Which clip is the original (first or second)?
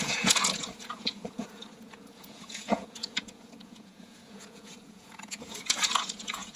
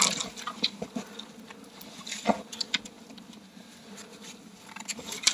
second